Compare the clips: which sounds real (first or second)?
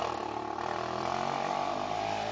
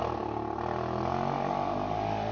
second